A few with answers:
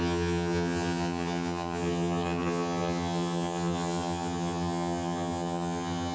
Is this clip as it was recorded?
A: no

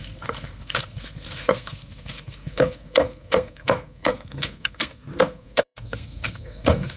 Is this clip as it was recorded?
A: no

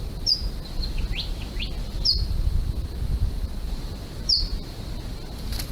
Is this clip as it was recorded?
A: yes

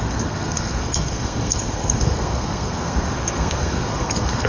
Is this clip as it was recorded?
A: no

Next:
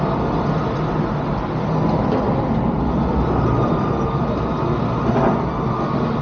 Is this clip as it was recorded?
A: yes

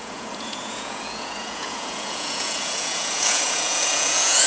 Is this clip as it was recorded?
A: no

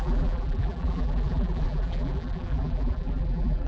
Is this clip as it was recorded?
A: no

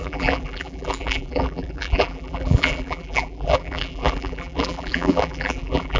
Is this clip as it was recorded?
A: no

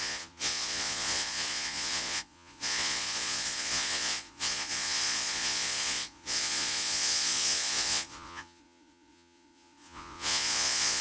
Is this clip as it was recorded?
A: no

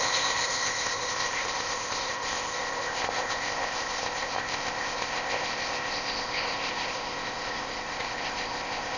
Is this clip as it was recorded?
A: no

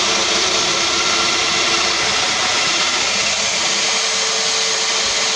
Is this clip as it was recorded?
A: yes